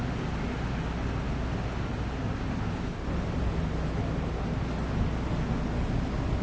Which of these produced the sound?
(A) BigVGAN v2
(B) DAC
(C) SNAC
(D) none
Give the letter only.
D